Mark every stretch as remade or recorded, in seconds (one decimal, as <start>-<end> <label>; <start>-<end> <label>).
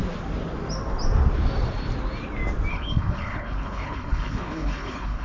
0.0-2.7 recorded; 2.7-5.2 remade